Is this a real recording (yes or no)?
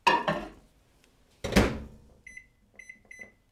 yes